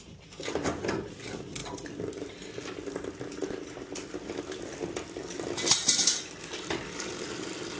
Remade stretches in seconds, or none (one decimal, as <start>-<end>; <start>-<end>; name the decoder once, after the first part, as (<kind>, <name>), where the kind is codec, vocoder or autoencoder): none